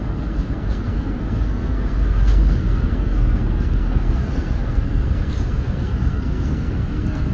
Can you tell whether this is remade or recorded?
remade